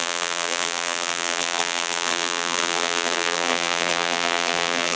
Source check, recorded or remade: remade